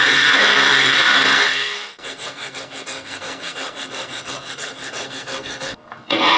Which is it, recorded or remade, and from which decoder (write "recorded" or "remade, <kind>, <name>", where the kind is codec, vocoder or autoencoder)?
remade, codec, SNAC